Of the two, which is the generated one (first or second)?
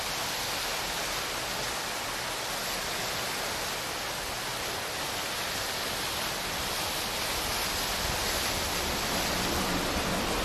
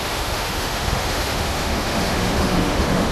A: second